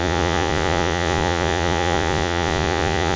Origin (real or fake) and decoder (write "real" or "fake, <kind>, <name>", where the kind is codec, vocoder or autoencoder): fake, vocoder, Vocos